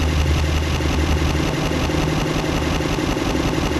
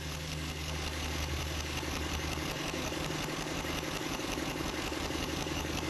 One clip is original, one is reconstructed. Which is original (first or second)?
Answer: first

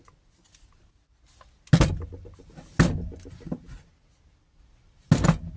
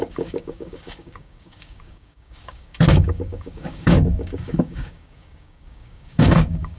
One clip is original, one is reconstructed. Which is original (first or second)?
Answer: first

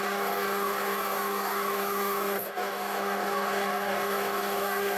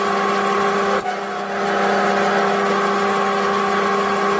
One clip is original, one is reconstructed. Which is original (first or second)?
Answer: second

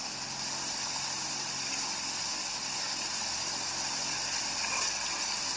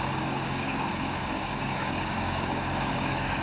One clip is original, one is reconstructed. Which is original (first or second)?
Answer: first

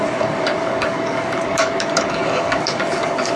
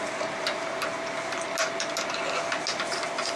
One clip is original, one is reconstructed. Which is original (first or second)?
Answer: second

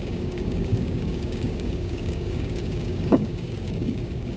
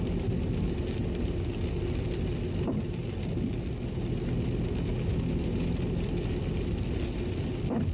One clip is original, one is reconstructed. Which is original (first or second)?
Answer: second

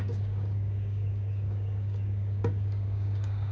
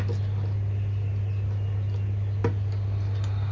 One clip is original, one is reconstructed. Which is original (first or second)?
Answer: second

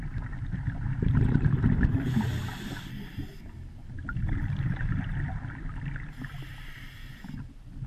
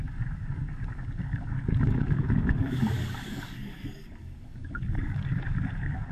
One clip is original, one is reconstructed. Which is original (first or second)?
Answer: first